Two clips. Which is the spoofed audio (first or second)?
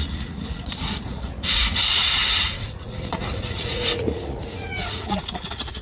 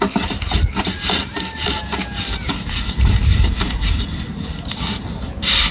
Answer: first